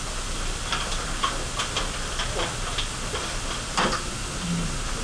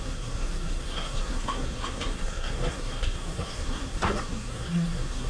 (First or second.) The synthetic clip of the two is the second